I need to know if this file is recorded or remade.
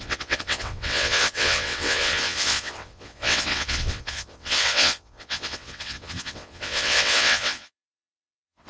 remade